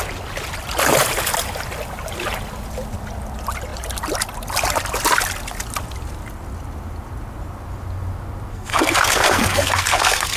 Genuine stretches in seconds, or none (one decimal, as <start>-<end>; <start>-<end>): 0.0-8.5